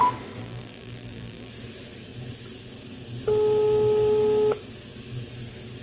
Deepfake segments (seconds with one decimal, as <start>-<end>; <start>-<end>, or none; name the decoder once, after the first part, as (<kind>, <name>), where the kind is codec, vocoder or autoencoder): 0.4-1.5 (vocoder, BigVGAN v2)